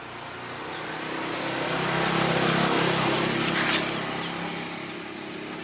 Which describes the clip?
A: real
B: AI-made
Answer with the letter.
A